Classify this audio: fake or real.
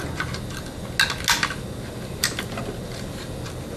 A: real